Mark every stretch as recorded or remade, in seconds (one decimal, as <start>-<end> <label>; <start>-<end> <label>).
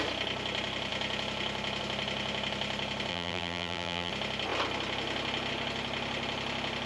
0.0-3.1 recorded; 3.1-4.1 remade; 4.1-6.9 recorded